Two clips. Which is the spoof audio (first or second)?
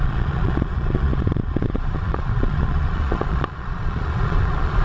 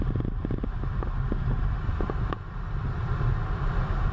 first